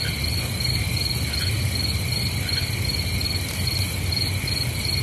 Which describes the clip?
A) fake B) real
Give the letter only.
B